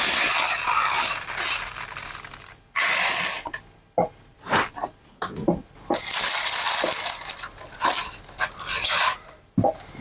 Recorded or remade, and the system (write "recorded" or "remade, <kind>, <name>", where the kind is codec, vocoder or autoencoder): recorded